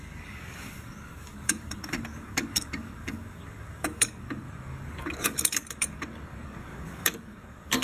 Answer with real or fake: fake